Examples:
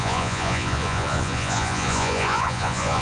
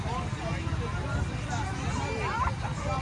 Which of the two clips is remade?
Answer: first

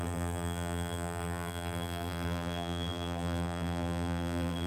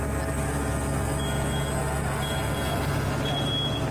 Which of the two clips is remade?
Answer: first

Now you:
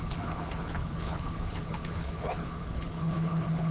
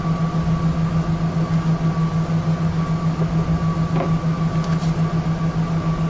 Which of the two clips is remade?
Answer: first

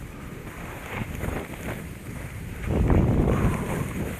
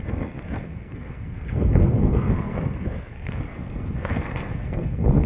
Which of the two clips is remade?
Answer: second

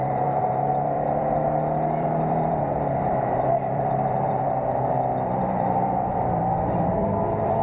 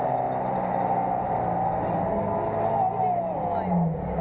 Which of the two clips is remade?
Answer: first